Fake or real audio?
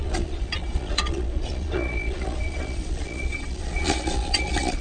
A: fake